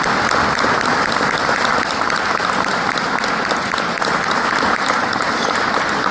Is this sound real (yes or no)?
yes